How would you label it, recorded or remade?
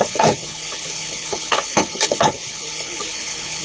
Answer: remade